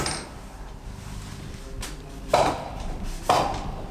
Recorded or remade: recorded